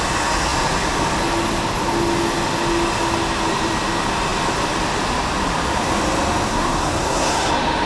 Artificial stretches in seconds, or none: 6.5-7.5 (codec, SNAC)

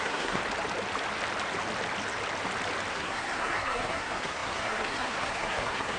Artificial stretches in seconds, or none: 0.0-0.4 (codec, SNAC); 2.9-6.0

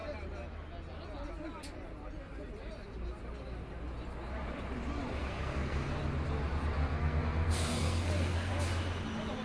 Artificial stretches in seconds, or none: 5.2-6.0 (codec, SNAC); 6.8-8.5

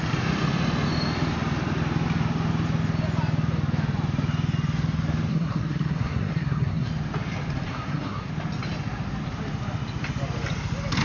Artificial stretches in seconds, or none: 5.3-6.9 (codec, SNAC); 7.7-8.3

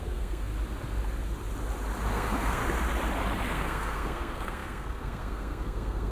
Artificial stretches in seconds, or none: 0.0-0.5 (codec, SNAC); 2.1-2.6; 3.5-6.1

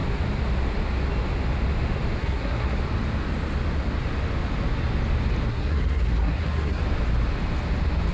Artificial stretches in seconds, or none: 2.2-2.8 (codec, SNAC); 5.5-6.8

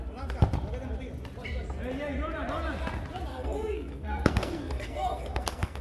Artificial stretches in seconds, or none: 3.3-5.8 (codec, SNAC)

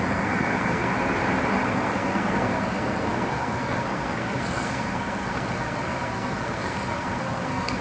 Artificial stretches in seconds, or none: 0.0-0.9 (codec, SNAC); 1.5-7.8